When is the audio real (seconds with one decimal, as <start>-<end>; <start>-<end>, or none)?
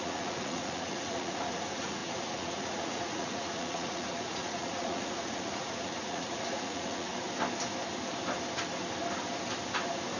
7.1-10.2